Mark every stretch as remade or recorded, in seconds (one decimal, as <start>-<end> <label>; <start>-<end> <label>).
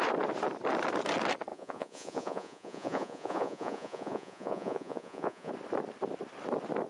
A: 0.0-1.5 recorded; 1.5-5.5 remade; 5.5-6.9 recorded